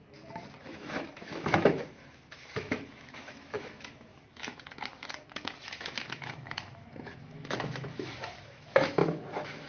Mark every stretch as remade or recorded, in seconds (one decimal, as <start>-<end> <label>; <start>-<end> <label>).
0.0-0.6 recorded; 0.6-9.7 remade